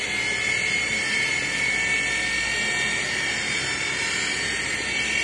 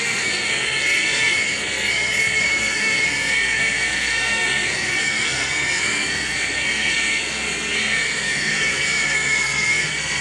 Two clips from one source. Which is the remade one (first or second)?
second